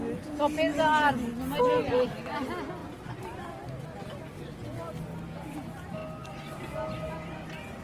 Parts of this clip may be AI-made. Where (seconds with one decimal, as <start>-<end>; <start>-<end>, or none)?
none